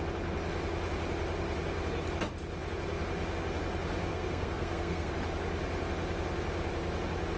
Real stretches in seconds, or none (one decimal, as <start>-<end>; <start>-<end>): 0.0-4.1; 5.1-7.4